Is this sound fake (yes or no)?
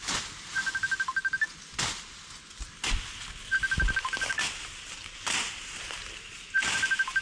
no